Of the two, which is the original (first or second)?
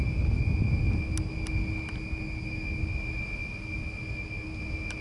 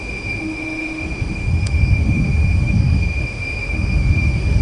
first